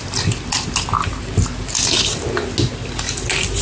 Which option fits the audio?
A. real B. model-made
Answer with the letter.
A